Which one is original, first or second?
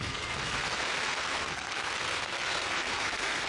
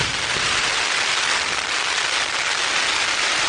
second